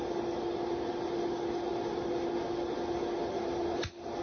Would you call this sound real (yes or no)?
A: yes